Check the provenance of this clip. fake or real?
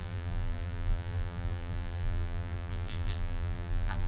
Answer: fake